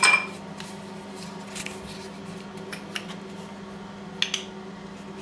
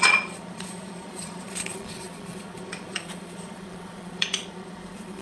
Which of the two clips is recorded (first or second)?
first